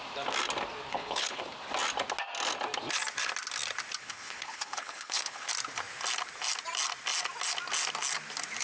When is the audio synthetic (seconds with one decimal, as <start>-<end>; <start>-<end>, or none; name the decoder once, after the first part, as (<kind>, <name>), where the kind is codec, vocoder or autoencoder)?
0.9-1.4 (codec, HILCodec); 4.0-5.5